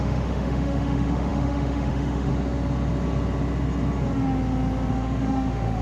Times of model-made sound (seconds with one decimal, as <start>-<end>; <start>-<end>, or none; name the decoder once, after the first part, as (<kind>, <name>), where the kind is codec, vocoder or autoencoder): 0.0-2.3 (autoencoder, DAC-VAE); 4.9-5.8